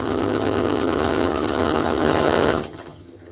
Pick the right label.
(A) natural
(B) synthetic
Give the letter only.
B